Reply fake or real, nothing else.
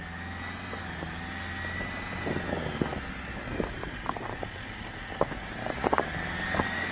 real